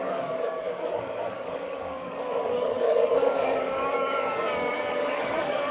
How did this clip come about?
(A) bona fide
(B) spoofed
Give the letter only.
B